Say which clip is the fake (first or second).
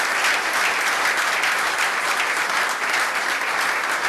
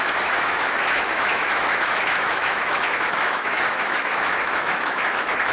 second